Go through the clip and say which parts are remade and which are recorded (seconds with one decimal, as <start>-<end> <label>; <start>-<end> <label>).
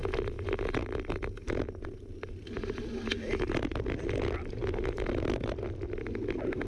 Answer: 0.0-6.7 recorded